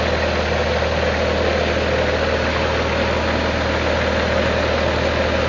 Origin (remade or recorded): recorded